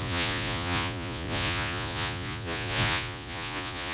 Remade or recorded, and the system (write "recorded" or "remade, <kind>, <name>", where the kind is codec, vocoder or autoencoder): remade, vocoder, Vocos